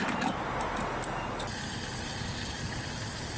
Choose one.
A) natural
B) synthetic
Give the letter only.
A